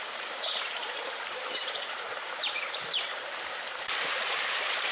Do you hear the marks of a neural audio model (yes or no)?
yes